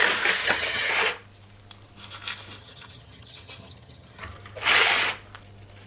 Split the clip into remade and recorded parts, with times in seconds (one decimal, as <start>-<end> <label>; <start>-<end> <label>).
0.0-0.4 recorded; 0.4-0.9 remade; 0.9-2.6 recorded; 2.6-4.2 remade; 4.2-5.9 recorded